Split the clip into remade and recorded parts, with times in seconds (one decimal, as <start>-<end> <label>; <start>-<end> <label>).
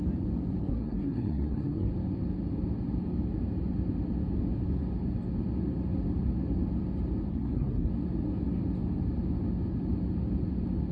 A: 0.0-0.6 recorded; 0.6-1.9 remade; 1.9-7.3 recorded; 7.3-7.9 remade; 7.9-10.9 recorded